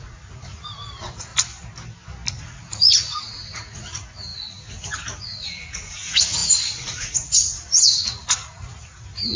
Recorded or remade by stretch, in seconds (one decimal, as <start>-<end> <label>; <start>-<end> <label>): 0.0-1.3 remade; 1.3-2.3 recorded; 2.3-9.4 remade